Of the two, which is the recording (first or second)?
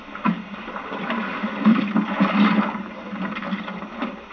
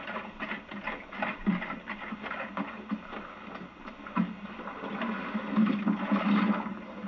second